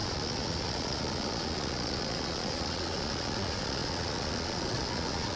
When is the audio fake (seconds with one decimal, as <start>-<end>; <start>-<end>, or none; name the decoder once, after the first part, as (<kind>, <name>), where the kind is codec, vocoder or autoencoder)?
0.0-5.4 (vocoder, Vocos)